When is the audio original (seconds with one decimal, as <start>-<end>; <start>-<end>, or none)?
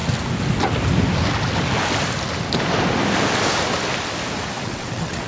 0.0-4.6